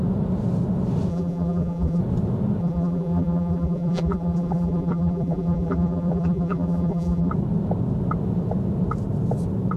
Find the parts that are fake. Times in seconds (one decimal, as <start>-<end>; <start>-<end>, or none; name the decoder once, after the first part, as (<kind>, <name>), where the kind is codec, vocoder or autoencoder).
1.1-2.0 (vocoder, BigVGAN v2); 2.6-7.3